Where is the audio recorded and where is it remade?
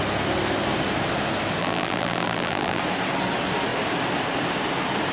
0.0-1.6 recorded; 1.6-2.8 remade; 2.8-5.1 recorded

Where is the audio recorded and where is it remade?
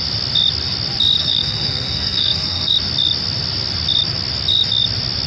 0.0-1.2 recorded; 1.2-2.7 remade; 2.7-5.3 recorded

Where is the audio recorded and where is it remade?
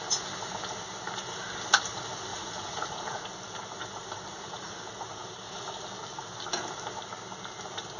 0.0-2.3 recorded; 2.3-3.2 remade; 3.2-4.3 recorded; 4.3-4.8 remade; 4.8-8.0 recorded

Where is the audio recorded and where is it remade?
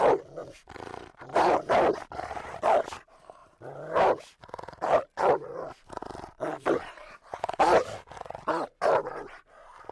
0.0-0.4 recorded; 0.4-2.6 remade; 2.6-3.4 recorded; 3.4-4.1 remade; 4.1-6.5 recorded; 6.5-7.5 remade; 7.5-9.9 recorded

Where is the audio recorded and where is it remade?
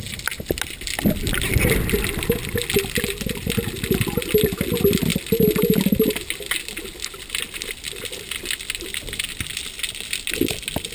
0.0-10.9 recorded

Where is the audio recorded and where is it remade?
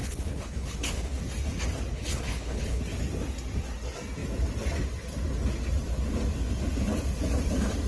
0.0-1.2 remade; 1.2-1.9 recorded; 1.9-2.8 remade; 2.8-7.9 recorded